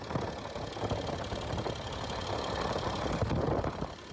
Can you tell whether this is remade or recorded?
recorded